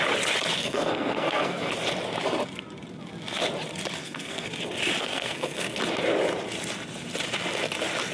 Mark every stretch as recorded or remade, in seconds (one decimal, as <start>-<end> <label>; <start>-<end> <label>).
0.0-0.6 recorded; 0.6-1.7 remade; 1.7-4.0 recorded; 4.0-4.5 remade; 4.5-5.0 recorded; 5.0-5.8 remade; 5.8-8.1 recorded